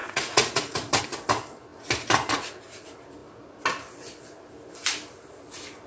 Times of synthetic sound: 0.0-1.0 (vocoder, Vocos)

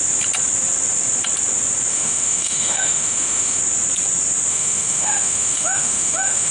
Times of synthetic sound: 1.9-3.6 (autoencoder, DAC-VAE); 4.5-6.5

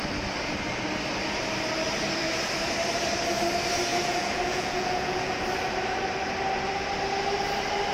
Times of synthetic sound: 3.9-5.4 (vocoder, Vocos)

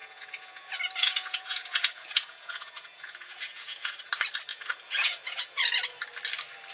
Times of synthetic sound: 0.0-0.6 (vocoder, Vocos); 1.0-4.0; 4.5-5.6

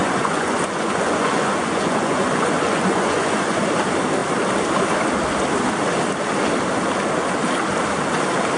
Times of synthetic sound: 0.0-3.6 (vocoder, Vocos)